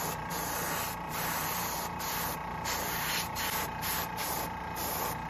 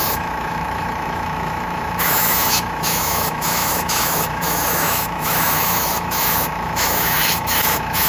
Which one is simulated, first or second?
second